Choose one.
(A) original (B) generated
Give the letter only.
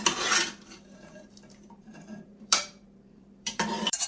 B